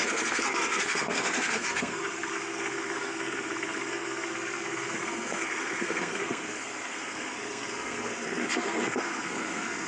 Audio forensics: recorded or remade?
remade